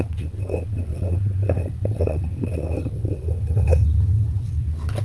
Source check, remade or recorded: remade